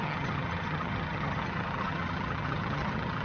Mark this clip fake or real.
fake